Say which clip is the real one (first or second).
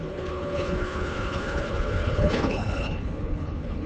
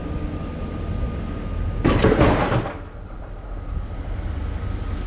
second